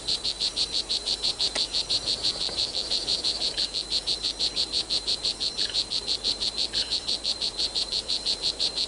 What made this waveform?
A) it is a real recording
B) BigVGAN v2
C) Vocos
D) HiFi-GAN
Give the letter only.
B